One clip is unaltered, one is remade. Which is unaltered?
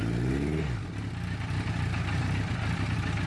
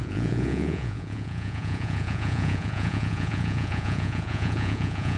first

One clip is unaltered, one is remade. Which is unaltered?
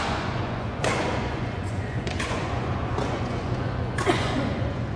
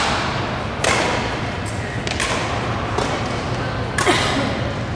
second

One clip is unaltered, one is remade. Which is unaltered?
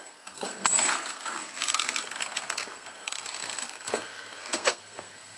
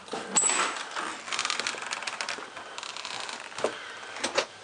second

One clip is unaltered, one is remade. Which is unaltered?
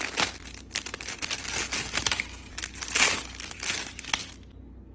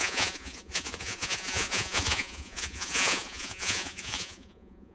first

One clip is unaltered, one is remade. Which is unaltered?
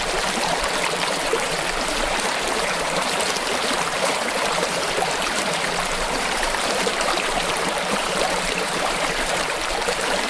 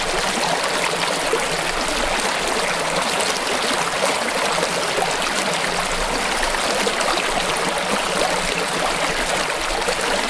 second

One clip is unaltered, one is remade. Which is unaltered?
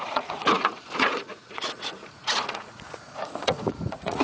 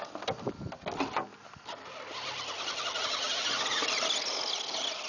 second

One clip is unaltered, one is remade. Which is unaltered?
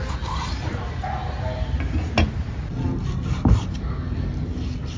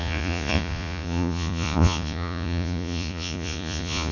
first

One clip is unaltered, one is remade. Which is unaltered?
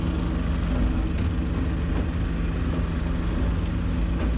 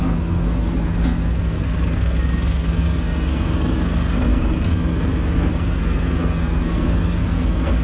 first